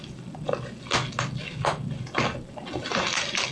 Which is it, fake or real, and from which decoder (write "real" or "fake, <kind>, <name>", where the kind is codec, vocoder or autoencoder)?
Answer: real